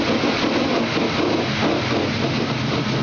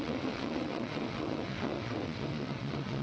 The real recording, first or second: first